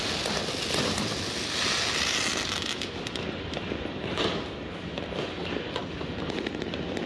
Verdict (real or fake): real